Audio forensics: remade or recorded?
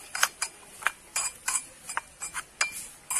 recorded